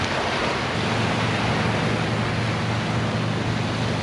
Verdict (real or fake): real